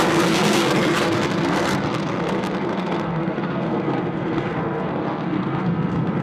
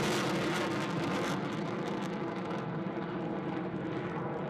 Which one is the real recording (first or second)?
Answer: second